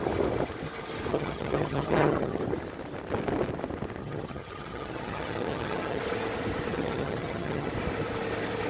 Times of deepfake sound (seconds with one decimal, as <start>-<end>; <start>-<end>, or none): 1.1-2.4; 4.0-6.0; 6.7-7.7